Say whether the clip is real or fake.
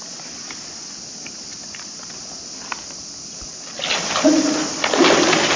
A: real